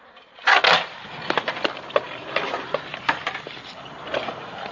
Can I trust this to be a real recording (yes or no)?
yes